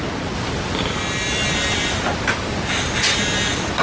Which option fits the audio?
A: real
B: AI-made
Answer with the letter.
A